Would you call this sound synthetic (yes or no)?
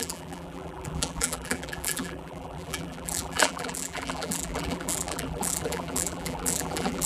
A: yes